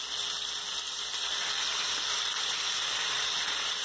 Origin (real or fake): real